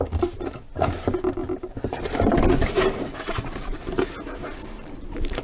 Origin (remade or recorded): remade